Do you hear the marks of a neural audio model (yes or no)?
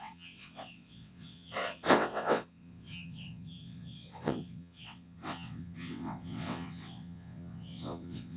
yes